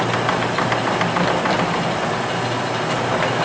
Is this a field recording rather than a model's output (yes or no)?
yes